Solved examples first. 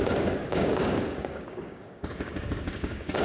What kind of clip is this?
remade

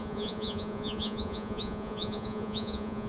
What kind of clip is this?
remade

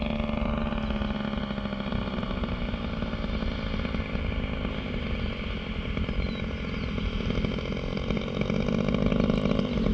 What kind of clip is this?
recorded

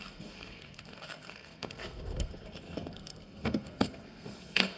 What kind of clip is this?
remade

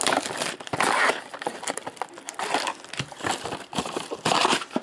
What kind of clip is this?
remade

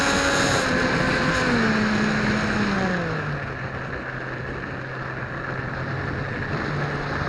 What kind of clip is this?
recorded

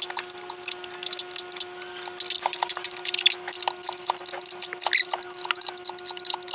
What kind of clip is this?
recorded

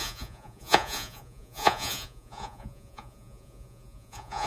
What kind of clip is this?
remade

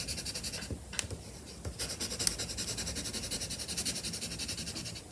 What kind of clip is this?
recorded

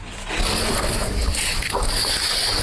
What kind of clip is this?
recorded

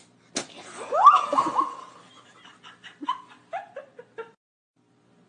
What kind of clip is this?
recorded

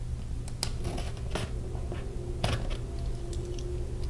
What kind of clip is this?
recorded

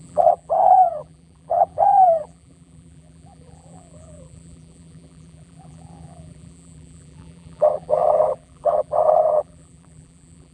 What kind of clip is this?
remade